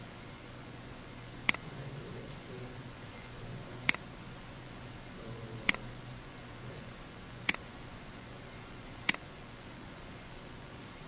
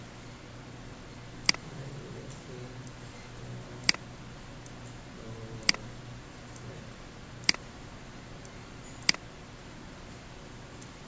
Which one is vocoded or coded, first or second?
first